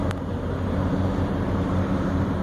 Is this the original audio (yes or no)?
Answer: no